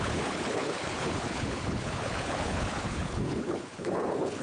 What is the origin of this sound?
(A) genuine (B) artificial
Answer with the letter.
B